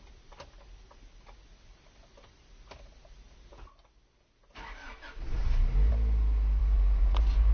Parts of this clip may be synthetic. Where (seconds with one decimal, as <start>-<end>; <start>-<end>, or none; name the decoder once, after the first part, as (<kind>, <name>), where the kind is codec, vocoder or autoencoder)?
6.6-7.5 (vocoder, Vocos)